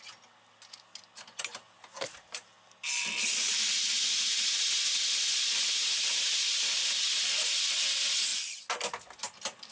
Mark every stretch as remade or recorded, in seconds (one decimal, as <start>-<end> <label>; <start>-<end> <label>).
0.0-9.7 recorded